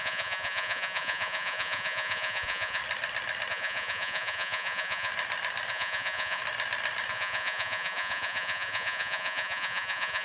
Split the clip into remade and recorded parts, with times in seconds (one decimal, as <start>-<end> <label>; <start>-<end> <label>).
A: 0.0-2.8 remade; 2.8-3.5 recorded; 3.5-5.1 remade; 5.1-5.7 recorded; 5.7-6.4 remade; 6.4-7.1 recorded; 7.1-10.2 remade